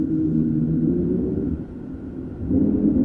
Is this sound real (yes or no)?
yes